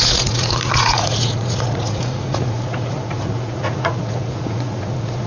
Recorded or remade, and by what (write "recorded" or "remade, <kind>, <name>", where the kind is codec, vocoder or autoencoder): remade, vocoder, Vocos